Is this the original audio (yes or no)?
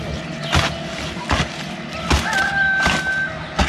yes